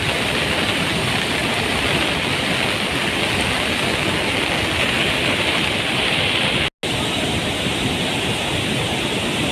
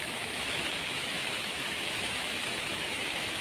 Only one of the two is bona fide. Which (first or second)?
first